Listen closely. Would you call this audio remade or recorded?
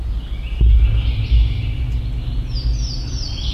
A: recorded